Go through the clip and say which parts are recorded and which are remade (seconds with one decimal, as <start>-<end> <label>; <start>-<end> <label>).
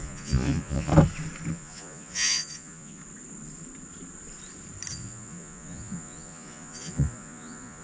0.0-0.9 remade; 0.9-1.5 recorded; 1.5-3.0 remade; 3.0-4.9 recorded; 4.9-7.8 remade